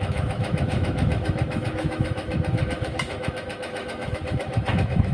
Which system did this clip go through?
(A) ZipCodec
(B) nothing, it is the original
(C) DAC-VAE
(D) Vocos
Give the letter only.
C